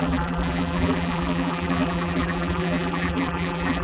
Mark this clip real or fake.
fake